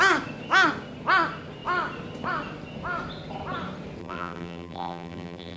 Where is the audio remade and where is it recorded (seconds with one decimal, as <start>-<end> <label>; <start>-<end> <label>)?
0.0-4.0 recorded; 4.0-5.6 remade